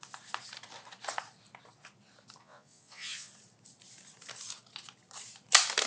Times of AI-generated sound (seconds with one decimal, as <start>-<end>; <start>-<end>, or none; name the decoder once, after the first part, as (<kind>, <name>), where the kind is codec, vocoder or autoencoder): 2.4-3.3 (vocoder, Vocos)

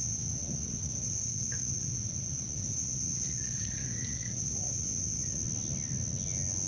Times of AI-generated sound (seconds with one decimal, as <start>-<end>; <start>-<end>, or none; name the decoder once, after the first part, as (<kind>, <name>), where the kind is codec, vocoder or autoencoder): 0.0-5.4 (vocoder, Vocos)

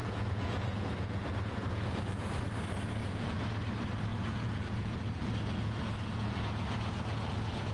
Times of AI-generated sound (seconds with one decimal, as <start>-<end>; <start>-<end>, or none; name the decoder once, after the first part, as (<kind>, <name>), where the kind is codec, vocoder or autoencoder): 0.0-2.4 (vocoder, Vocos); 3.0-3.5; 4.1-7.7

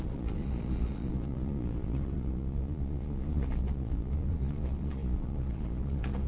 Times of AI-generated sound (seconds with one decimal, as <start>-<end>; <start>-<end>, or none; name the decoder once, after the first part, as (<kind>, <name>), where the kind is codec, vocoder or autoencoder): 0.0-6.3 (vocoder, Vocos)

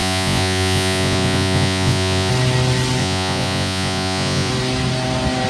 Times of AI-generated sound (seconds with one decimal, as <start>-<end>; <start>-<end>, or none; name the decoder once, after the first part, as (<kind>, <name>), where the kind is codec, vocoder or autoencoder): 0.0-2.3 (vocoder, Vocos); 3.0-4.5

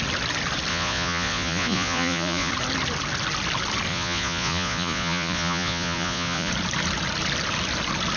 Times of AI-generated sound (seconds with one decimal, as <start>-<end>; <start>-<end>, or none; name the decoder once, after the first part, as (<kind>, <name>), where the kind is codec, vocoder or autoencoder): 0.7-2.5 (vocoder, Vocos); 3.9-6.5

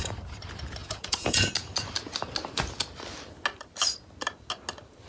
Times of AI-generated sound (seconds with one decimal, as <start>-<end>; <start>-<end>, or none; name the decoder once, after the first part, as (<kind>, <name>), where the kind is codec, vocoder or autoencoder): 0.8-1.5 (vocoder, Vocos)

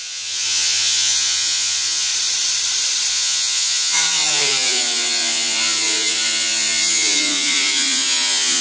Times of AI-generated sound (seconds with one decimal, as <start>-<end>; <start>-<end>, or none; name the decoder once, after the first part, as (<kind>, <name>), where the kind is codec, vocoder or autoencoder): 0.0-2.1 (vocoder, Vocos); 3.1-8.6